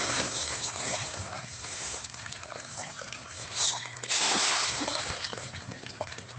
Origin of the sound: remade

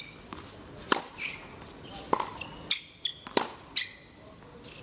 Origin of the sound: recorded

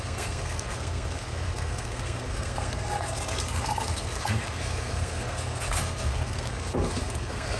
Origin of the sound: remade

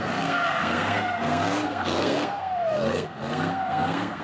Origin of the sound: remade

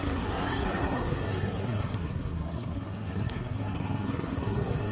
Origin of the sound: remade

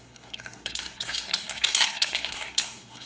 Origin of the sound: remade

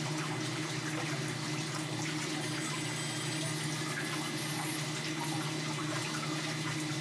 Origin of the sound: recorded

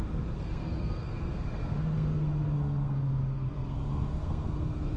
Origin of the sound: remade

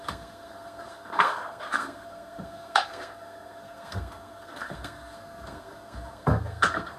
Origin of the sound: remade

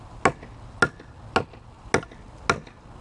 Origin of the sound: recorded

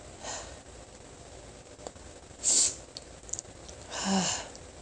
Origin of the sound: recorded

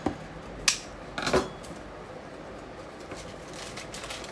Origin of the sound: recorded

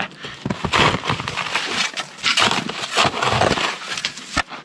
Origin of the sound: recorded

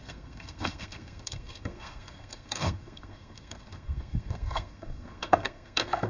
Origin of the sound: remade